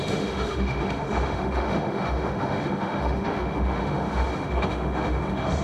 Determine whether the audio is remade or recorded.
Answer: remade